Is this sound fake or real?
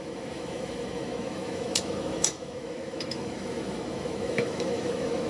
fake